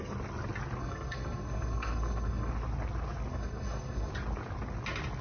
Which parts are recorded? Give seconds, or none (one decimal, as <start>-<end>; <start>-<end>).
0.0-0.8; 2.5-3.3; 4.1-5.2